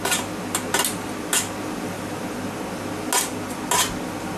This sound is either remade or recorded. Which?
recorded